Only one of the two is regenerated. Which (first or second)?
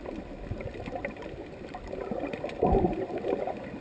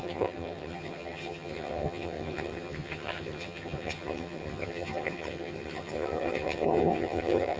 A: second